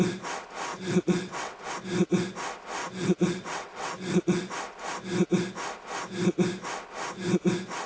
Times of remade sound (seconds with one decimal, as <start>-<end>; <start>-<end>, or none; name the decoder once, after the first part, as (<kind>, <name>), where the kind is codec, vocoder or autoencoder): 0.7-1.7 (vocoder, WaveNeXt); 2.8-4.5